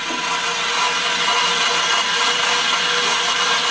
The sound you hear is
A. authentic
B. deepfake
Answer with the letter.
A